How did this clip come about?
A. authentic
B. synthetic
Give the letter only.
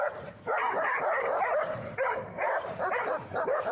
B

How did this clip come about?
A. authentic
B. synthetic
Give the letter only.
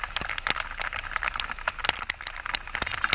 A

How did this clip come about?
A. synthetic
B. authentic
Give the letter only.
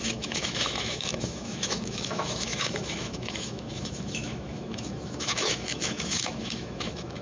A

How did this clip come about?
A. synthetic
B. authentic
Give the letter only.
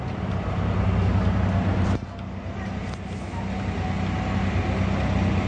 B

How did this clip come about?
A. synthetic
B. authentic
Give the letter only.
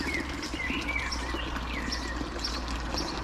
B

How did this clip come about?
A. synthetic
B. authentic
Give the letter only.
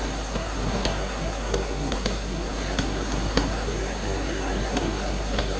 A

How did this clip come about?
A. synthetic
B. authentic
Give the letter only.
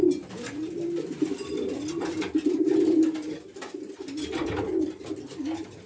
B